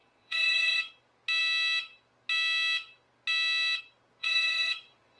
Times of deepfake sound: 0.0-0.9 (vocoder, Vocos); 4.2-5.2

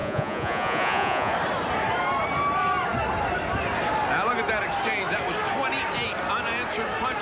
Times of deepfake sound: 0.0-1.3 (vocoder, Vocos)

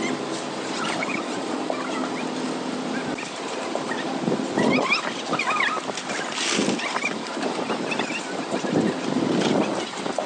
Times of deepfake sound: 1.0-1.6 (vocoder, Vocos)

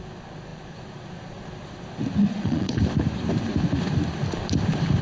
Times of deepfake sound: 2.2-2.8 (vocoder, Vocos)